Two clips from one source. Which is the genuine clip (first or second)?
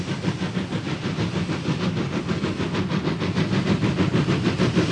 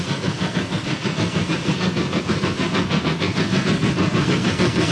first